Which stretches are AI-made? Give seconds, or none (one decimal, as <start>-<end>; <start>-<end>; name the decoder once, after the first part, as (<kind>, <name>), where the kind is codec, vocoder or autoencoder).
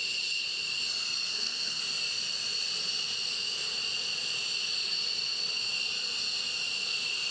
1.3-1.8 (codec, SNAC)